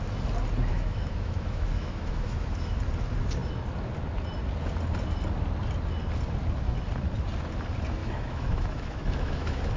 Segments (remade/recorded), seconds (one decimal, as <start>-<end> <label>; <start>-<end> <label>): 0.0-0.7 recorded; 0.7-2.8 remade; 2.8-8.0 recorded; 8.0-9.8 remade